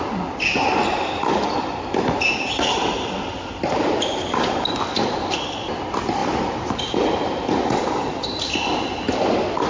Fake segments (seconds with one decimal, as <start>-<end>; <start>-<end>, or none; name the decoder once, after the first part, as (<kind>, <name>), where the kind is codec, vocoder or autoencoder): 0.0-9.7 (vocoder, BigVGAN v2)